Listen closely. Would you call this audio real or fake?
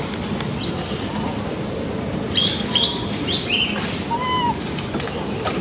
real